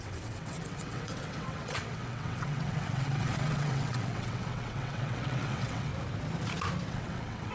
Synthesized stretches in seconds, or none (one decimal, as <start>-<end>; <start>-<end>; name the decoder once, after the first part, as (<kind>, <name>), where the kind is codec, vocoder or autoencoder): 0.0-5.9 (vocoder, WaveNeXt); 6.9-7.5